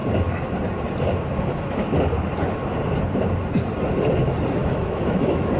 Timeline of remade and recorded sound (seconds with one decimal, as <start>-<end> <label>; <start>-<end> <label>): 0.0-4.6 recorded; 4.6-5.6 remade